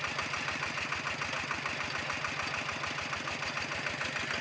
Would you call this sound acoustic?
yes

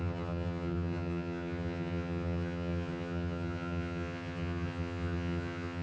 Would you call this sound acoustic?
no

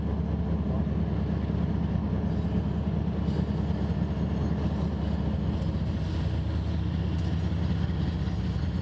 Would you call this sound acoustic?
yes